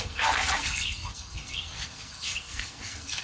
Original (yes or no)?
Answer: no